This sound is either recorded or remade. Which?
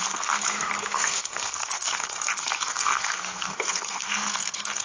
remade